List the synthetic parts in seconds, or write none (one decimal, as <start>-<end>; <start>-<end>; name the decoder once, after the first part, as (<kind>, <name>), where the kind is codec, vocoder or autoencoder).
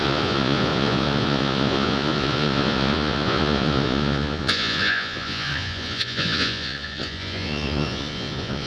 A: 0.0-8.7 (vocoder, Vocos)